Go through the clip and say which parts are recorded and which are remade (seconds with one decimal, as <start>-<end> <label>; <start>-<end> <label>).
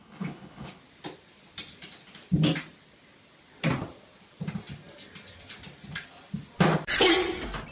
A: 0.0-0.8 remade; 0.8-7.7 recorded